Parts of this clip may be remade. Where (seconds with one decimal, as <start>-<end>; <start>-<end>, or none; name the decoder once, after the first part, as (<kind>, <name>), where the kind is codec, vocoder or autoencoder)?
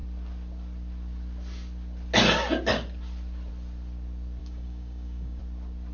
4.4-5.4 (codec, DAC)